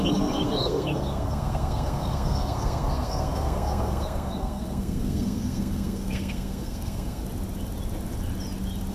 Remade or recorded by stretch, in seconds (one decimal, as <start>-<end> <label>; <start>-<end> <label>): 0.0-7.2 remade; 7.2-8.9 recorded